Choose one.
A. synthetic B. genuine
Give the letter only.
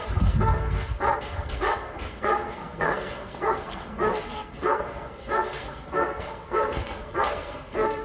A